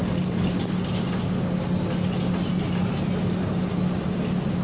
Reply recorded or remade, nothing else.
recorded